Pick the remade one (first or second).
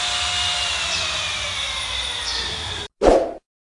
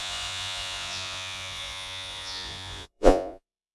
second